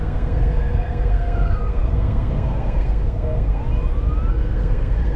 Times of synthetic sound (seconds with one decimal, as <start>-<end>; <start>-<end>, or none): 0.0-3.6; 4.3-5.2